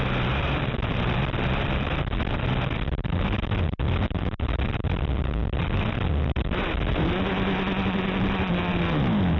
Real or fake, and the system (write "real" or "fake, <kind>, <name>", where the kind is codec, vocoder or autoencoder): real